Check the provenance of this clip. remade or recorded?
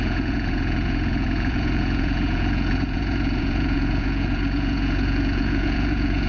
remade